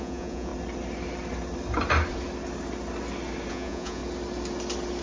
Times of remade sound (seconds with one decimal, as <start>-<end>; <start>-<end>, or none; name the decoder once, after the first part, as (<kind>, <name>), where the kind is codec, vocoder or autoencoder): 0.0-0.5 (vocoder, Vocos); 3.5-4.0